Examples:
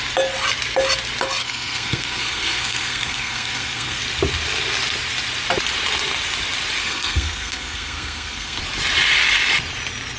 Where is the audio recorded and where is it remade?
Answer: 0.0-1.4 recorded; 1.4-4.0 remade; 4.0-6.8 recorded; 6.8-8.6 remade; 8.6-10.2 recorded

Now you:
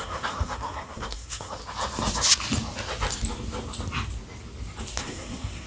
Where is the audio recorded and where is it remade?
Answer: 0.0-1.6 remade; 1.6-5.0 recorded; 5.0-5.7 remade

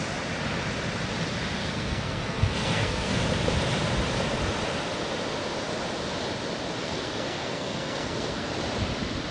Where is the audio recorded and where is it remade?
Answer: 0.0-1.6 recorded; 1.6-3.2 remade; 3.2-6.8 recorded; 6.8-8.5 remade; 8.5-9.3 recorded

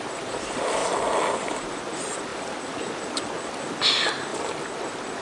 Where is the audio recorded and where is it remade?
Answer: 0.0-5.2 recorded

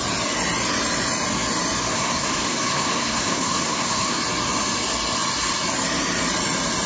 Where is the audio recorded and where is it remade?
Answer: 0.0-1.9 recorded; 1.9-4.2 remade; 4.2-6.9 recorded

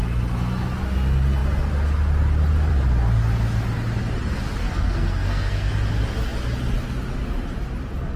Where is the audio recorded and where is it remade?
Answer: 0.0-4.6 recorded; 4.6-5.7 remade; 5.7-8.2 recorded

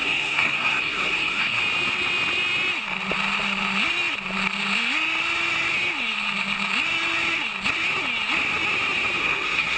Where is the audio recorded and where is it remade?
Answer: 0.0-1.6 remade; 1.6-9.2 recorded; 9.2-9.8 remade

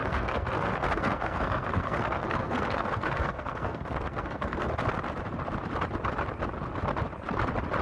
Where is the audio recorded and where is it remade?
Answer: 0.0-4.7 remade; 4.7-7.8 recorded